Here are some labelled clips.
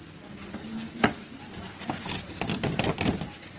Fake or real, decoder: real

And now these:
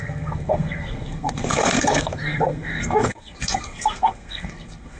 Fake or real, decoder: fake, codec, SNAC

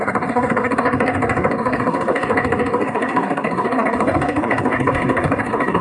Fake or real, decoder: fake, codec, SNAC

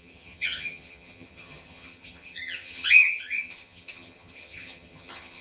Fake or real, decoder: fake, vocoder, HiFi-GAN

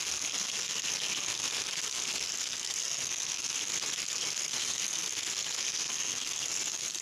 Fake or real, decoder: fake, codec, SNAC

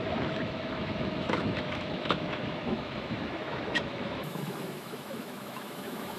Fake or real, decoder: fake, autoencoder, DAC-VAE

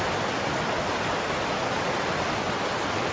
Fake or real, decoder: real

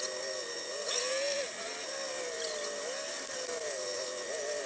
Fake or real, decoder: real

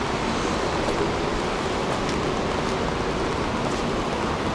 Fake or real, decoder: real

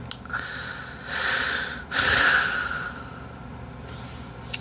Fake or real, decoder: real